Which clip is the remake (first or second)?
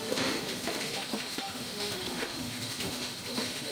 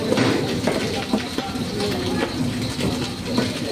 first